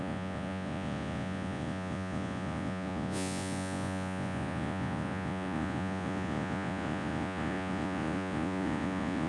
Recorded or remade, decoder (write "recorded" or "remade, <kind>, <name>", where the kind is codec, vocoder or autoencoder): remade, vocoder, Vocos